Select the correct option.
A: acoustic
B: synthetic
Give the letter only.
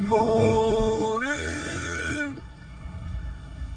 B